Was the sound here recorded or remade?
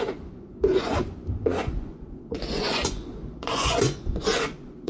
remade